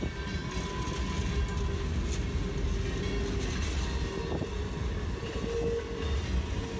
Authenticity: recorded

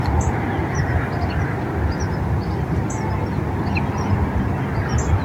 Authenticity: recorded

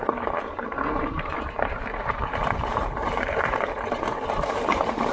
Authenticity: remade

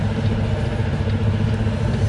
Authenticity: recorded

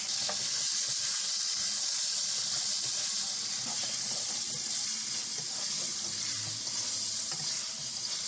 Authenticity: remade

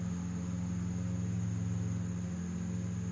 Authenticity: recorded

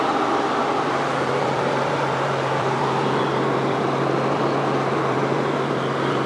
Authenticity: remade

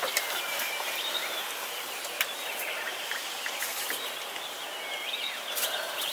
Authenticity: recorded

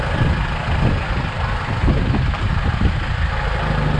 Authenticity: recorded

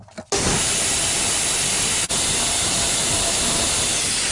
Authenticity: recorded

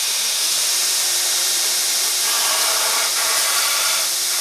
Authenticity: remade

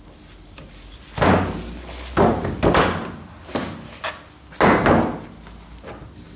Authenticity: recorded